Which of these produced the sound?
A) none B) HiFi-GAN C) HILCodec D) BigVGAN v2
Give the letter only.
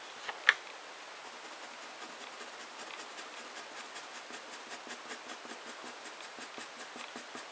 A